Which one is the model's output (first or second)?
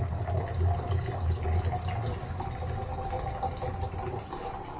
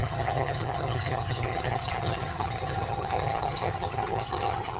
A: second